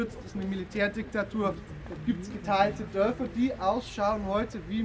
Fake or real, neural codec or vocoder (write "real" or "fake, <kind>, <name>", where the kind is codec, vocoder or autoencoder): real